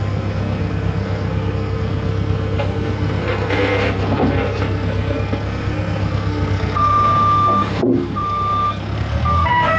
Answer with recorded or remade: remade